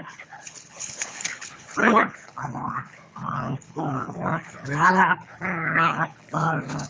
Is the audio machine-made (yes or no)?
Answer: yes